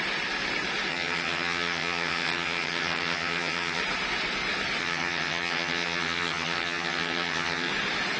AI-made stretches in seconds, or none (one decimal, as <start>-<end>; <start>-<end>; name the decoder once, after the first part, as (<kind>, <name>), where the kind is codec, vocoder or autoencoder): 0.9-3.8 (vocoder, HiFi-GAN); 4.8-7.7